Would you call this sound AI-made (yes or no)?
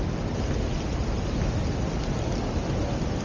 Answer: no